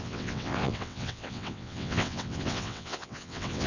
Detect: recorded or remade remade